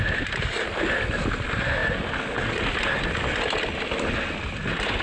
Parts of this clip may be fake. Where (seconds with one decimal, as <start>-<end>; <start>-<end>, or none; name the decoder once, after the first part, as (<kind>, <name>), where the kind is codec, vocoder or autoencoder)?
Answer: none